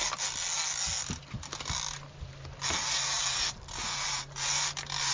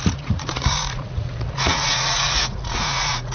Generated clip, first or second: second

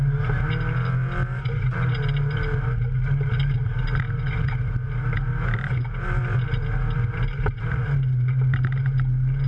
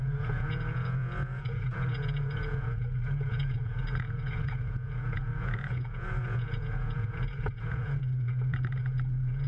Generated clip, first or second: second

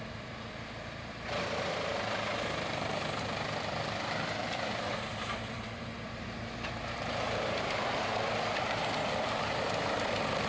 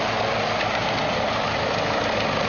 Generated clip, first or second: first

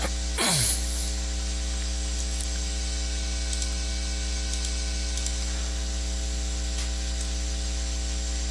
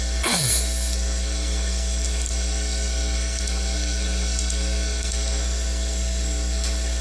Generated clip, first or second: second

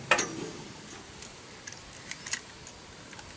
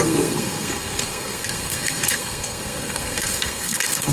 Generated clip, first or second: second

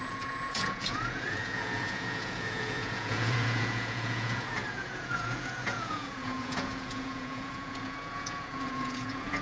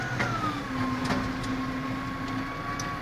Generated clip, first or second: first